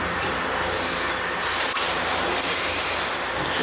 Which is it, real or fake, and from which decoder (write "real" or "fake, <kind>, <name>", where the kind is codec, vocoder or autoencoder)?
real